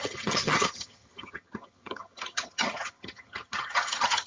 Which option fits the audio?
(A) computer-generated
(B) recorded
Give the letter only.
A